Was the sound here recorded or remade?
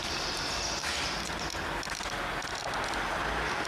recorded